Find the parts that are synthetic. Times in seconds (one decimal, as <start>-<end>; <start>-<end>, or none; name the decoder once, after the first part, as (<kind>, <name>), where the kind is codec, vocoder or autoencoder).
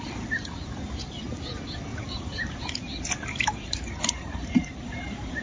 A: 1.9-5.4 (vocoder, BigVGAN v2)